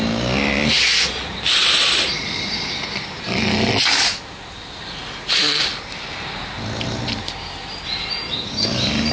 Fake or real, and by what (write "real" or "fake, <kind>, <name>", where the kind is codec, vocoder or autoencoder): real